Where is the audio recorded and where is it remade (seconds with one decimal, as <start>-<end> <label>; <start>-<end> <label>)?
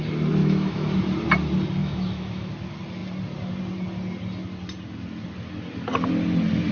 0.0-0.4 recorded; 0.4-1.0 remade; 1.0-1.8 recorded; 1.8-2.5 remade; 2.5-6.7 recorded